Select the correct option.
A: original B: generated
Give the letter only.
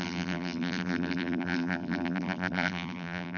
B